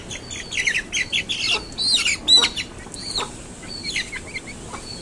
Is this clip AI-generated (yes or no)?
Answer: no